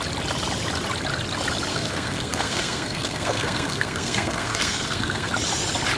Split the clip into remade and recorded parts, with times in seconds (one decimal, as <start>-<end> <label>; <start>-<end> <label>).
0.0-1.7 recorded; 1.7-5.3 remade; 5.3-6.0 recorded